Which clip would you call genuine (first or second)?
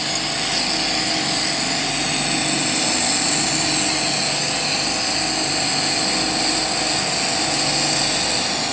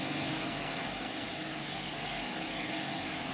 first